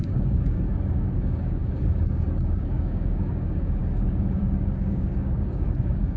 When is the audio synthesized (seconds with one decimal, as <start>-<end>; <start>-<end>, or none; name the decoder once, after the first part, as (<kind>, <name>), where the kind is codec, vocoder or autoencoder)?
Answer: 0.0-6.2 (codec, DAC)